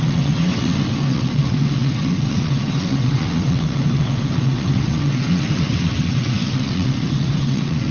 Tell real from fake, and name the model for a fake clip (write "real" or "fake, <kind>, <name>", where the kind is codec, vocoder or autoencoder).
fake, vocoder, WaveNeXt